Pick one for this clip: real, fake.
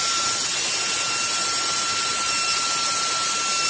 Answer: real